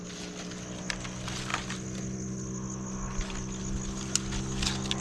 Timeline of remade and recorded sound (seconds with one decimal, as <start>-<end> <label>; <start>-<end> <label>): 0.0-5.0 recorded